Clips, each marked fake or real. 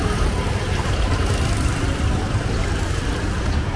real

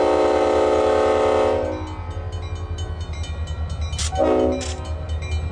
real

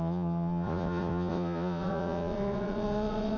fake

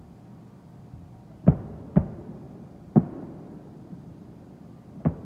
real